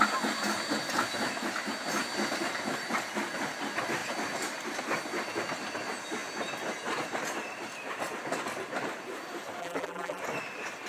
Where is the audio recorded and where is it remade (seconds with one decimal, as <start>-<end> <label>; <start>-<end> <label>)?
0.0-9.6 recorded; 9.6-10.2 remade; 10.2-10.9 recorded